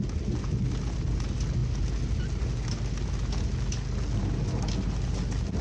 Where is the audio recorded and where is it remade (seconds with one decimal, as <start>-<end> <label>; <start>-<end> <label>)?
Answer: 0.0-5.6 recorded